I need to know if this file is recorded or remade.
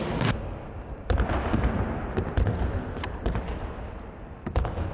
recorded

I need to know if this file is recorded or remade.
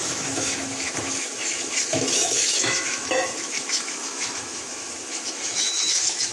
remade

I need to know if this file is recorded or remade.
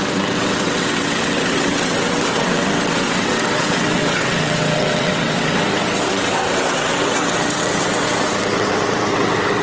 remade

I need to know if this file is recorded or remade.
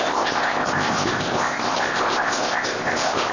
remade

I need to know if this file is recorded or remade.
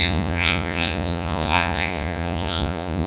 remade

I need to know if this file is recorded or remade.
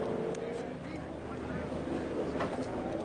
recorded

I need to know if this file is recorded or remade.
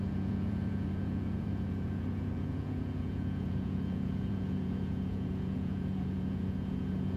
remade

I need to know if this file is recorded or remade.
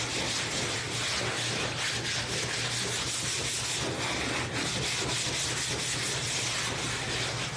recorded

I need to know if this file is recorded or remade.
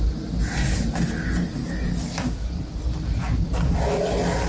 recorded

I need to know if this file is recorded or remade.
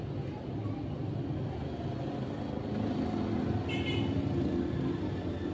recorded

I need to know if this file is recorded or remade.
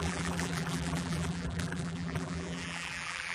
remade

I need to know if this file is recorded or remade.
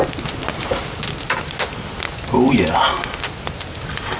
recorded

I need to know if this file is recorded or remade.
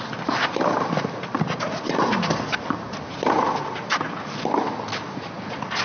recorded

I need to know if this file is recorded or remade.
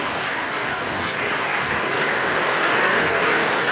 remade